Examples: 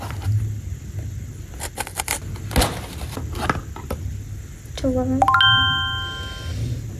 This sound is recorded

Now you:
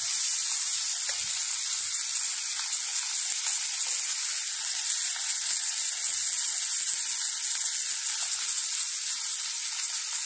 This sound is recorded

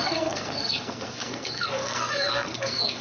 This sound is remade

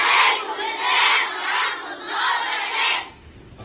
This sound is recorded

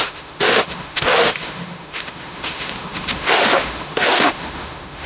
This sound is remade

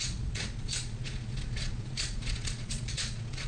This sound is remade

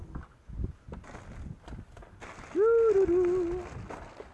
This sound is recorded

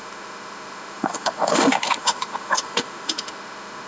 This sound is remade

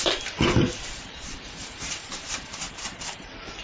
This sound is remade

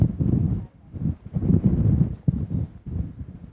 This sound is recorded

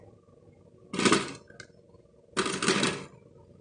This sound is recorded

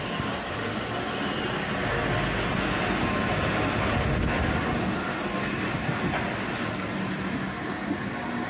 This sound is recorded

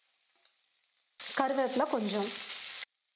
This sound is recorded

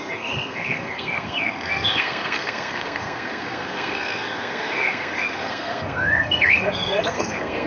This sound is remade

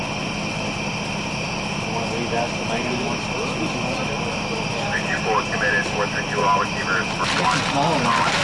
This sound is recorded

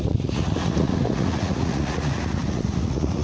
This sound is remade